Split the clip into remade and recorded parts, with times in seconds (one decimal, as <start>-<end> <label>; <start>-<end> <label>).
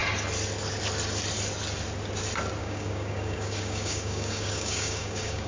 0.0-2.6 recorded; 2.6-5.5 remade